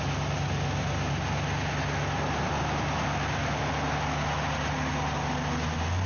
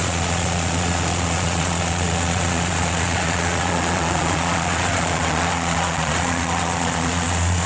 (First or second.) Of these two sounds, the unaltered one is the first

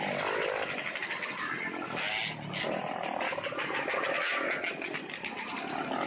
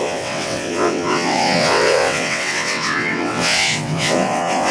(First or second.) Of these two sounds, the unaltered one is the first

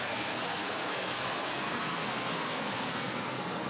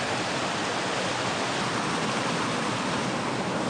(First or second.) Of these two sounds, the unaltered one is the second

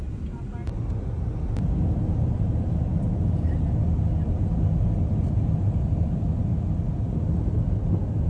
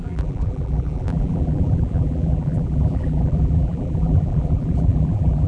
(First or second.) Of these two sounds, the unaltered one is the first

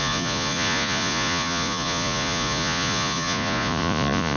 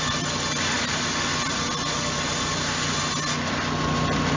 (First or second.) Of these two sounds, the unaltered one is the second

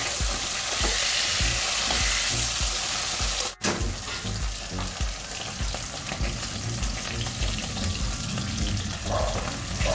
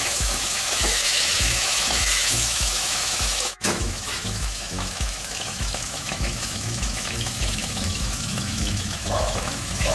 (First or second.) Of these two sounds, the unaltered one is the first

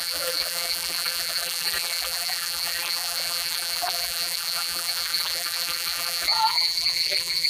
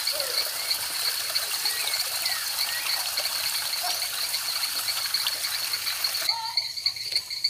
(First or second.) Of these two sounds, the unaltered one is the second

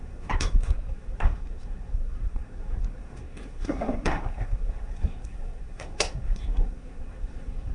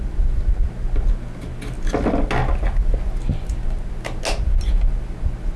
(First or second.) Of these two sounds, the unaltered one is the second